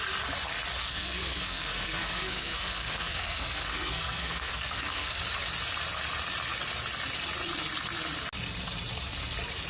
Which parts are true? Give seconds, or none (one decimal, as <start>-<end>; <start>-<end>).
0.0-0.8; 5.2-9.7